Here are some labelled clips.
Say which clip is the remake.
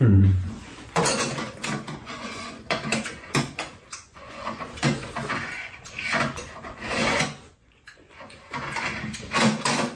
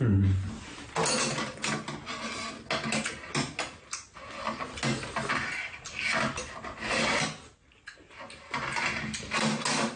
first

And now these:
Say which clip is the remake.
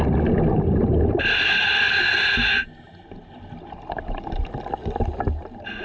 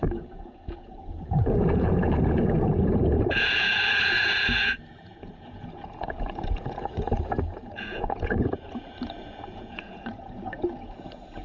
second